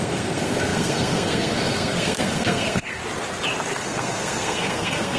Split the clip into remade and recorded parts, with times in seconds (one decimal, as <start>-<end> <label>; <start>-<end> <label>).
0.0-3.0 remade; 3.0-3.7 recorded; 3.7-5.2 remade